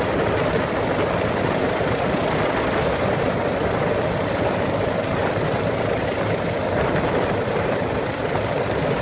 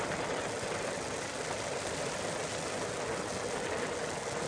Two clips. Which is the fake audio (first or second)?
first